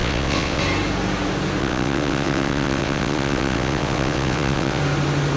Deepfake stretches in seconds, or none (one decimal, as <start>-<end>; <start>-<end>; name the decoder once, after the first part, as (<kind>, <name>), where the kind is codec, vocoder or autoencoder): 0.0-0.6 (vocoder, WaveNeXt); 1.6-4.8